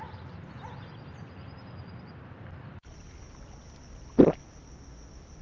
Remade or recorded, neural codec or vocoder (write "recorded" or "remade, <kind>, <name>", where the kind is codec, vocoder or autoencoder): recorded